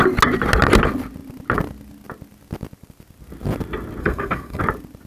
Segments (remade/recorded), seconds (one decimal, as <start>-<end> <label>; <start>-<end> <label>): 0.0-4.0 recorded; 4.0-4.6 remade; 4.6-5.1 recorded